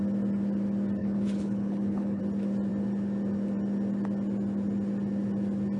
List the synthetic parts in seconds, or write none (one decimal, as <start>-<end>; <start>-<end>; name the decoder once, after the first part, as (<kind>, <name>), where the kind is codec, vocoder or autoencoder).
1.0-2.2 (codec, HILCodec)